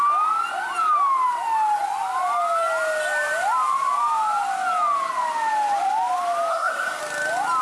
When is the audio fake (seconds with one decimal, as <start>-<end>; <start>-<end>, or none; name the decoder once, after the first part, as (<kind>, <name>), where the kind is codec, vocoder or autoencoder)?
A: 6.5-7.0 (codec, SNAC)